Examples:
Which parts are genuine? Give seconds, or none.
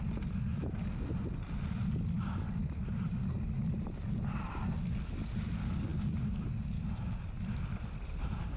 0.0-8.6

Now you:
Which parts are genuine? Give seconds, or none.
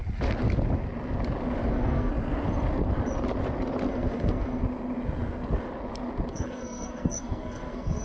0.0-1.7; 2.1-3.9; 4.6-6.3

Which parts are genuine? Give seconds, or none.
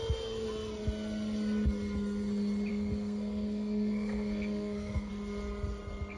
0.0-2.7; 5.1-6.2